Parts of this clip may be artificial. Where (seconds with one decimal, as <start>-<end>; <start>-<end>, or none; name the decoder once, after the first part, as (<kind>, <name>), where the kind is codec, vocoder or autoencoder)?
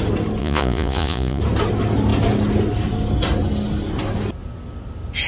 0.4-1.4 (vocoder, Vocos)